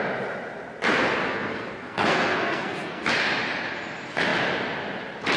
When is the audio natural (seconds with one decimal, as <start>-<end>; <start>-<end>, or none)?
0.0-1.2; 3.0-5.4

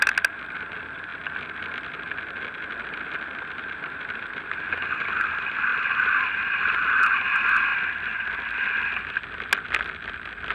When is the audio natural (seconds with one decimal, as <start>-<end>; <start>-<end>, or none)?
0.0-10.5

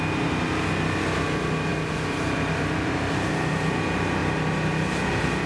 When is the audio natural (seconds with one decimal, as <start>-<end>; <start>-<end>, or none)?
0.0-5.5

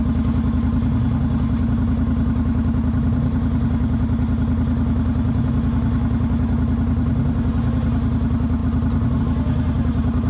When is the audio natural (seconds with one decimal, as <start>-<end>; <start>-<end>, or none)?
0.0-10.3

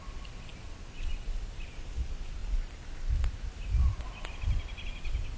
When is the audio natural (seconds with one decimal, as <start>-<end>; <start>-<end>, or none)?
0.0-5.4

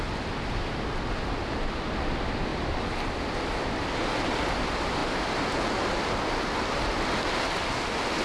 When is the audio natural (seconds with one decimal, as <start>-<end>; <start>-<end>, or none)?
0.0-8.2

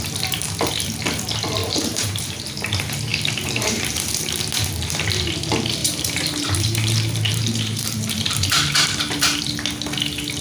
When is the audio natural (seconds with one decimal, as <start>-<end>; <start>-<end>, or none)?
0.0-1.6; 2.4-3.1; 4.4-5.8; 9.4-10.4